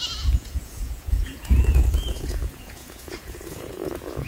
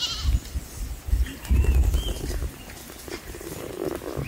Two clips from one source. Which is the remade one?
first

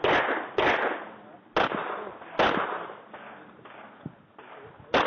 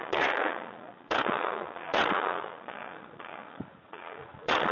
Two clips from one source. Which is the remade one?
second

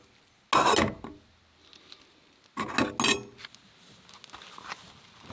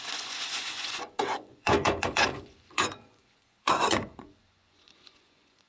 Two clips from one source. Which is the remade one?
second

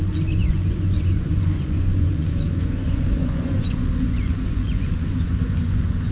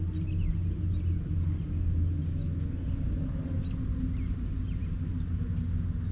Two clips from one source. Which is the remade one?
first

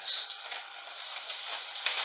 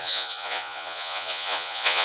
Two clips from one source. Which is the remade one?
second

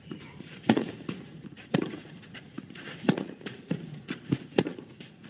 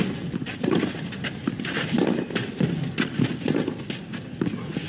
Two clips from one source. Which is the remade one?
first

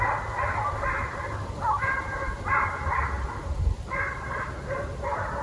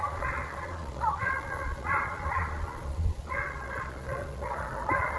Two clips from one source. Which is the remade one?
second